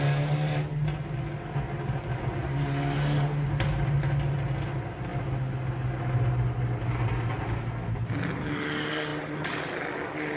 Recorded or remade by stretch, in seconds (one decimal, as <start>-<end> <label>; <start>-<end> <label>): 0.0-10.4 recorded